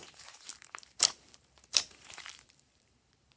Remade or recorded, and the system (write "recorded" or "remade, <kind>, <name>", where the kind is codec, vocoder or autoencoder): remade, vocoder, BigVGAN v2